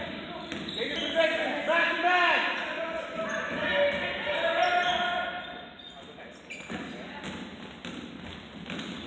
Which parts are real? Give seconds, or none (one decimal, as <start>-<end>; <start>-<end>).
0.0-9.1